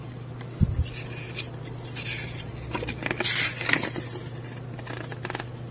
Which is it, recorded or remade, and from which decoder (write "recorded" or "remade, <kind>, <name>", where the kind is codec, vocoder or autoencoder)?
recorded